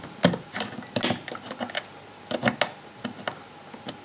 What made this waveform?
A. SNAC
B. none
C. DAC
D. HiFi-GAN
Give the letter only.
B